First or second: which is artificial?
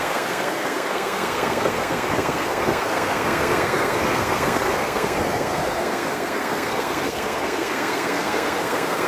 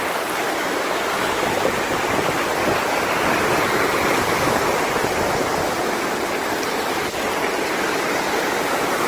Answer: first